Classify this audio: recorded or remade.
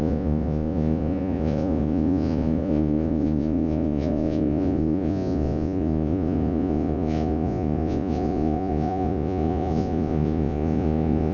remade